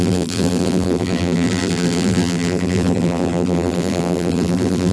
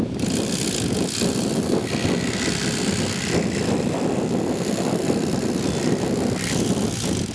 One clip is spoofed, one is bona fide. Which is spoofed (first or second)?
first